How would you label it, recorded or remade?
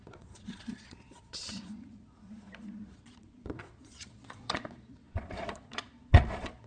remade